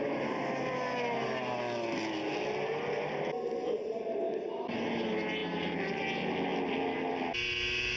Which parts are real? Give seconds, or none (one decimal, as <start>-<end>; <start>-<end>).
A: 0.0-8.0